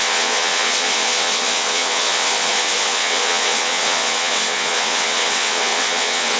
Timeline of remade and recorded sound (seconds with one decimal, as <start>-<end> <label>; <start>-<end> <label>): 0.0-6.4 remade